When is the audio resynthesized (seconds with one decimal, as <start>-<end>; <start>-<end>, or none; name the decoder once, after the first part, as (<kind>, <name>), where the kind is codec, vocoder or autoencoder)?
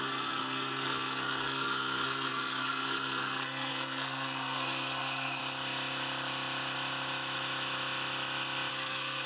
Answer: 0.0-5.4 (codec, SNAC); 8.7-9.3